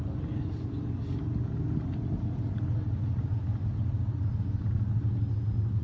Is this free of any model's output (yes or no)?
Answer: yes